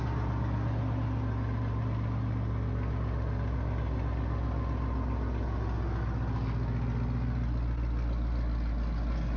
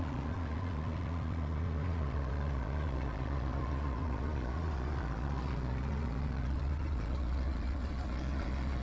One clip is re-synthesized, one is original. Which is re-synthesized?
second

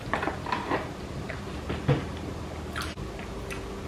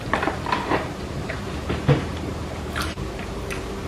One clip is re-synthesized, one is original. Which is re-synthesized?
second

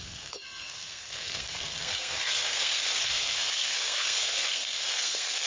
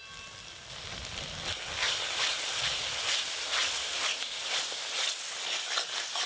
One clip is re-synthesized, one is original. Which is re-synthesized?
first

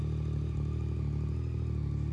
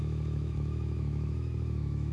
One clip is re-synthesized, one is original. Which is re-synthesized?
second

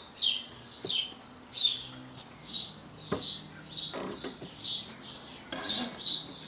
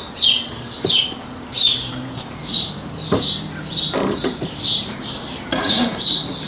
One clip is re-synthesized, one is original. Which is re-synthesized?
second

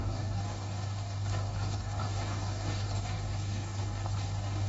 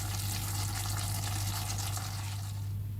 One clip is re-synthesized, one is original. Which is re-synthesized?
first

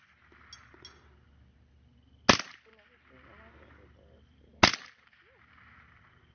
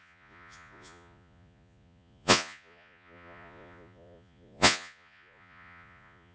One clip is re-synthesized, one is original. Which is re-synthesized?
second